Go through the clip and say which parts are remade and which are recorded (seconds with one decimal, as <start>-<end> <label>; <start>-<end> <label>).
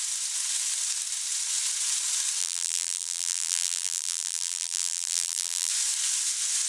0.0-2.4 recorded; 2.4-5.7 remade; 5.7-6.7 recorded